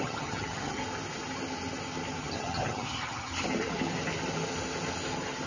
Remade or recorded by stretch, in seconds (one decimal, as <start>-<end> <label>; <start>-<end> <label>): 0.0-0.8 remade; 0.8-2.2 recorded; 2.2-3.3 remade; 3.3-5.5 recorded